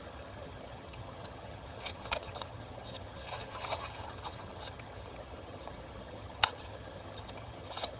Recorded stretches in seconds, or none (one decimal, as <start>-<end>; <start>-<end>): none